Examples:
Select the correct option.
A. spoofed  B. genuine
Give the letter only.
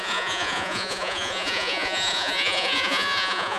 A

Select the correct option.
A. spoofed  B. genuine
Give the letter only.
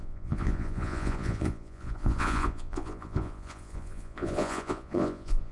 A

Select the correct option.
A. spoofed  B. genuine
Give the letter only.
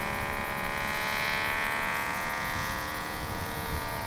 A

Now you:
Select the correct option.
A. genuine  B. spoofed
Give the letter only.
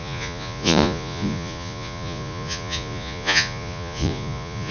B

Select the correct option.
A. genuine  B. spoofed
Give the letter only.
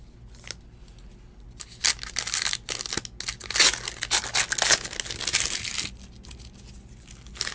A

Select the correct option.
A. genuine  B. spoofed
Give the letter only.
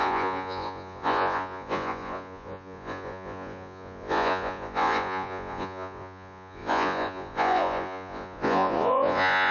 B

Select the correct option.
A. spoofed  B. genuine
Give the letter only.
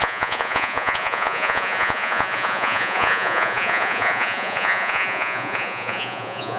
A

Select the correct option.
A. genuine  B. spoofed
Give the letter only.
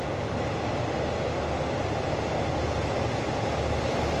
A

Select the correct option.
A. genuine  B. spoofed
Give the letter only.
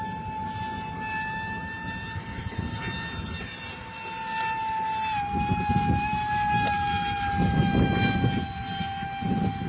A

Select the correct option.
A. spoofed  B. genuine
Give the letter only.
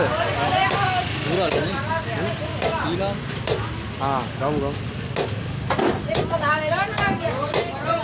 B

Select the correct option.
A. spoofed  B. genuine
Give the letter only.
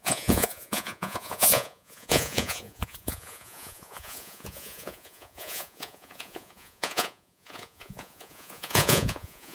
A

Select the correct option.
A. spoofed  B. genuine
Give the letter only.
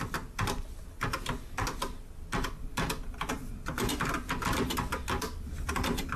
B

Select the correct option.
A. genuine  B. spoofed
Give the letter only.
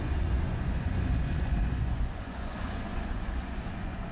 B